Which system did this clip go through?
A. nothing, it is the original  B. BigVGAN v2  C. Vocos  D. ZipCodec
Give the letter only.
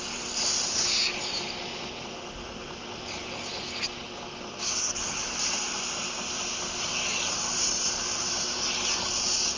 A